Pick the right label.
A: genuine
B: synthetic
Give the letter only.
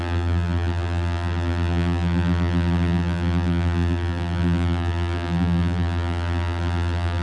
B